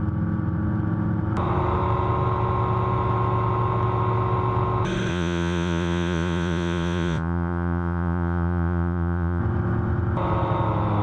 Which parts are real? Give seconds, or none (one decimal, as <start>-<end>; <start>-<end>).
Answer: 0.0-5.1; 9.4-11.0